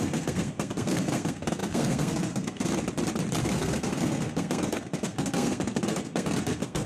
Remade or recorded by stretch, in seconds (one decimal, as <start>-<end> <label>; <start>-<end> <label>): 0.0-2.7 remade; 2.7-3.4 recorded; 3.4-6.9 remade